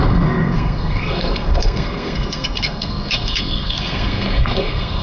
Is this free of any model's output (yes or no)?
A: no